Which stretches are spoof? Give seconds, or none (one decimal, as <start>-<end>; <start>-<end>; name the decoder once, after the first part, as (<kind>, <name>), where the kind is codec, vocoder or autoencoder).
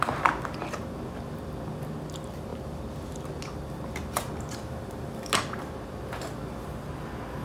none